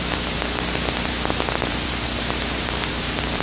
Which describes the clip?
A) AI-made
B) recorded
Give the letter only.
A